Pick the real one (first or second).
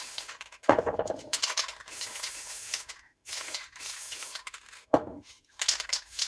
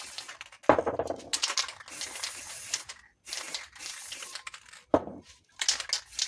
second